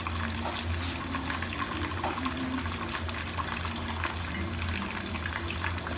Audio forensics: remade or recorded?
recorded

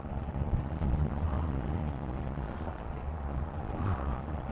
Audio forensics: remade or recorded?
remade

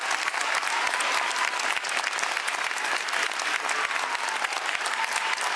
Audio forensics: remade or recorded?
recorded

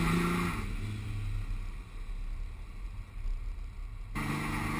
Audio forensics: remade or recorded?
recorded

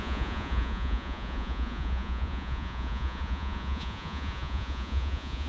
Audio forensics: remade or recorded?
remade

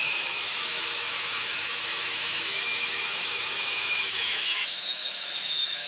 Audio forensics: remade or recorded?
remade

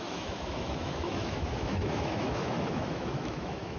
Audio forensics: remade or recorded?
remade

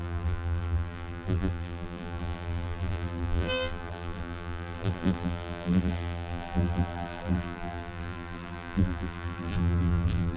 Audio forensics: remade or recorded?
remade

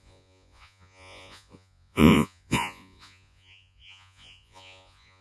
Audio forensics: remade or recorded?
remade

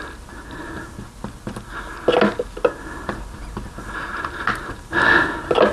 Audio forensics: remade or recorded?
recorded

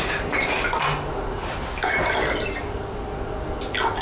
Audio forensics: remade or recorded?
recorded